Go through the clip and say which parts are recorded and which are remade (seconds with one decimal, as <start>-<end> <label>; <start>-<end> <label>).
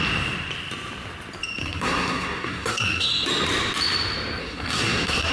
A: 0.0-1.6 recorded; 1.6-3.1 remade; 3.1-4.4 recorded; 4.4-5.3 remade